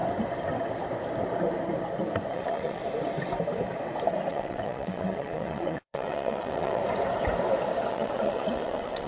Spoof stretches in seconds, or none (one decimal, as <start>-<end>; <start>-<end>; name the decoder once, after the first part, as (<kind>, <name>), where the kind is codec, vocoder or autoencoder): 2.3-2.8 (vocoder, WaveNeXt); 4.3-6.8; 7.9-9.1